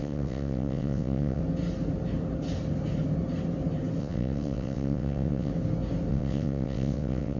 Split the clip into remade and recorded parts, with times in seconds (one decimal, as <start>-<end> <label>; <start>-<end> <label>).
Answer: 0.0-1.4 remade; 1.4-4.0 recorded; 4.0-5.5 remade; 5.5-6.1 recorded; 6.1-7.4 remade